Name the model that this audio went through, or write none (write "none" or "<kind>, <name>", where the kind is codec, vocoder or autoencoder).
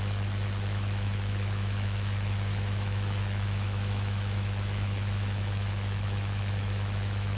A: autoencoder, DAC-VAE